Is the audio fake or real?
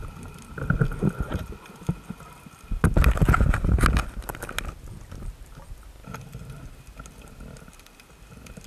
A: real